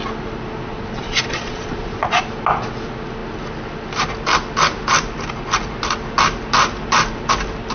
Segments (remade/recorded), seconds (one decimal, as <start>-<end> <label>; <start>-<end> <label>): 0.0-0.7 recorded; 0.7-2.3 remade; 2.3-7.7 recorded